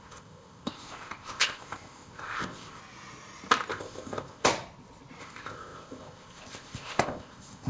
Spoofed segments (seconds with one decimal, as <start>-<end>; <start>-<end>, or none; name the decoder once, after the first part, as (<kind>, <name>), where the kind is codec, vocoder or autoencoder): 0.0-2.8 (codec, ZipCodec); 3.7-4.5; 5.2-7.7